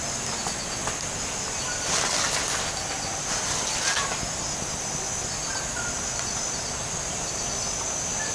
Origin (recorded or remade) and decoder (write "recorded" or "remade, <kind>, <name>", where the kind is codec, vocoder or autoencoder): recorded